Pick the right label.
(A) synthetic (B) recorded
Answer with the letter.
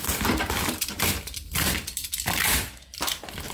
A